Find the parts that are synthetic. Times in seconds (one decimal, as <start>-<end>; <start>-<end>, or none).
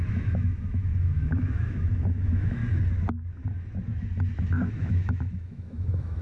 0.0-2.6; 4.7-6.2